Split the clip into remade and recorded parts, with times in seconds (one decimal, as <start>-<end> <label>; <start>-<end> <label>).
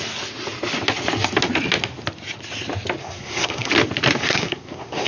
0.0-3.0 recorded; 3.0-3.7 remade; 3.7-4.2 recorded; 4.2-5.1 remade